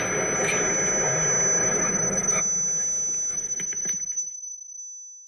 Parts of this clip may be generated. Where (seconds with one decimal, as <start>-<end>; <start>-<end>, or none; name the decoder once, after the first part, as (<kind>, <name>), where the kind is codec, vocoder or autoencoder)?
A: 1.6-2.4 (vocoder, BigVGAN v2); 3.3-4.8